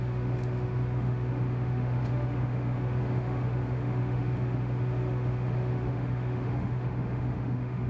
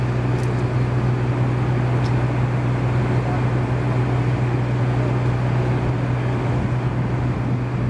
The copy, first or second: first